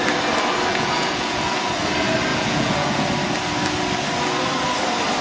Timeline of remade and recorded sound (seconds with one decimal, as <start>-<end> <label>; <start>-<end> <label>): 0.0-0.7 recorded; 0.7-1.6 remade; 1.6-2.3 recorded; 2.3-3.1 remade; 3.1-5.2 recorded